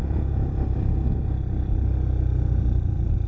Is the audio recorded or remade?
recorded